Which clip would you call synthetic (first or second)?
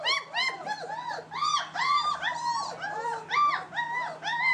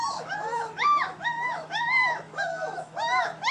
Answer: second